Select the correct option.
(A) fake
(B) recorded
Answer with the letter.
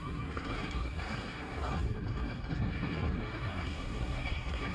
A